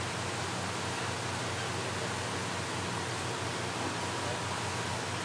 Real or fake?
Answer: real